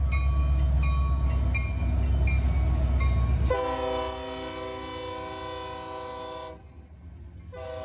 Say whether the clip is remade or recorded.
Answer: recorded